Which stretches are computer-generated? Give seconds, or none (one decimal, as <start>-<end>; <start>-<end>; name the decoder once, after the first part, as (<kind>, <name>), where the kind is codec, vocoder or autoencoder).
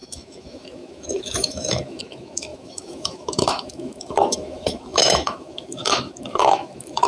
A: 0.0-7.1 (autoencoder, DAC-VAE)